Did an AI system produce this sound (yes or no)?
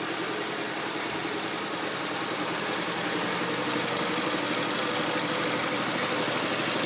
no